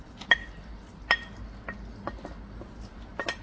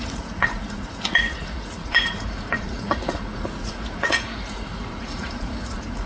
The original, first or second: first